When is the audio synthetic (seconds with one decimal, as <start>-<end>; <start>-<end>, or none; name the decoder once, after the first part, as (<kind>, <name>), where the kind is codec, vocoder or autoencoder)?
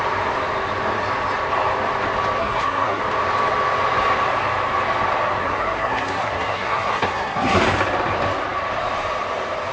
2.4-3.0 (codec, SNAC); 5.4-7.6